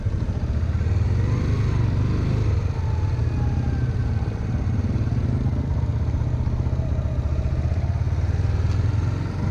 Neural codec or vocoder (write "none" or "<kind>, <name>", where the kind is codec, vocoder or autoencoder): none